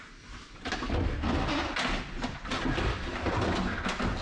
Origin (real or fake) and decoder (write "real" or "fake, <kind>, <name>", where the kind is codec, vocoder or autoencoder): real